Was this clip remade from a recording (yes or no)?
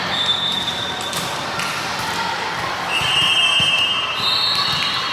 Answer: yes